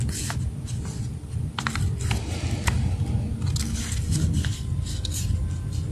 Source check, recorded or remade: recorded